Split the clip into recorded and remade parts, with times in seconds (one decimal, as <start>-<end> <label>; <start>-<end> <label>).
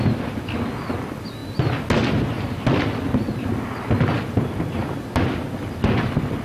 0.0-6.4 recorded